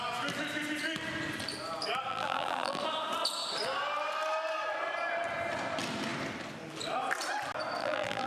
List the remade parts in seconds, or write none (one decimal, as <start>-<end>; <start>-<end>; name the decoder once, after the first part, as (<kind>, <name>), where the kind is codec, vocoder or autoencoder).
2.1-2.8 (vocoder, BigVGAN v2); 7.8-8.3